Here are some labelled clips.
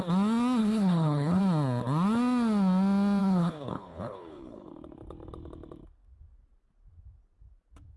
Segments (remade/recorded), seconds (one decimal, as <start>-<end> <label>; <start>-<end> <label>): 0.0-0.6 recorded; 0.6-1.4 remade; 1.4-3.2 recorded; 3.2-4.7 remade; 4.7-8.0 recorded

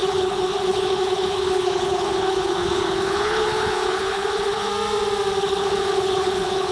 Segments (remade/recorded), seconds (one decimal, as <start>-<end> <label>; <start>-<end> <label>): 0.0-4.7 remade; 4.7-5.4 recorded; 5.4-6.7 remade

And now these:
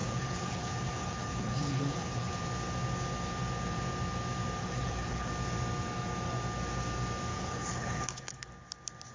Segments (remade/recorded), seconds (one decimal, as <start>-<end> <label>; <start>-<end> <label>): 0.0-2.3 remade; 2.3-4.6 recorded; 4.6-5.3 remade; 5.3-7.3 recorded; 7.3-8.5 remade; 8.5-9.1 recorded